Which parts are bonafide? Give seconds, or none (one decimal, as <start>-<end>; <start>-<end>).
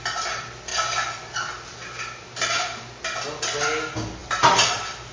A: 0.0-5.1